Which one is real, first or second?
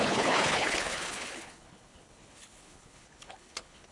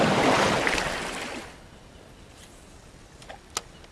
second